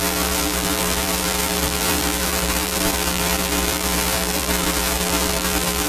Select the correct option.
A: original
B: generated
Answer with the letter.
B